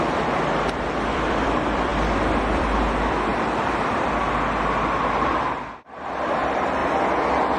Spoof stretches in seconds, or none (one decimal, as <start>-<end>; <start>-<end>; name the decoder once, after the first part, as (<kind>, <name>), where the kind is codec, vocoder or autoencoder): 0.0-3.3 (vocoder, BigVGAN v2); 6.1-6.8